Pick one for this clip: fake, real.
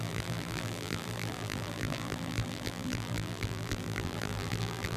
fake